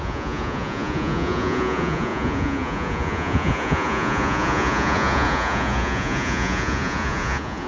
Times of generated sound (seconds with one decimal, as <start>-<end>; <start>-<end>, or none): 0.0-7.7